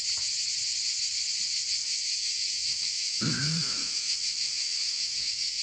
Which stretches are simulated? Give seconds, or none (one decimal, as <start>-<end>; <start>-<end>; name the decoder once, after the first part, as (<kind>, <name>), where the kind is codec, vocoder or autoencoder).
1.8-5.6 (autoencoder, DAC-VAE)